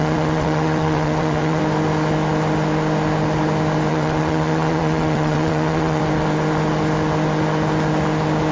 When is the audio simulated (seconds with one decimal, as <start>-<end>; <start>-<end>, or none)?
0.0-1.6; 3.9-6.0